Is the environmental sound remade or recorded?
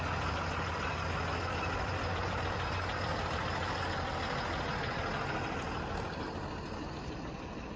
recorded